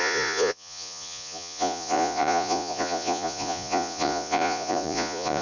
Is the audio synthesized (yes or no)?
yes